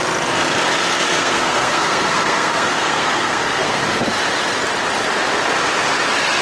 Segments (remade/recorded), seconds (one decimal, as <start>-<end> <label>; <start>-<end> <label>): 0.0-1.1 recorded; 1.1-3.8 remade; 3.8-6.4 recorded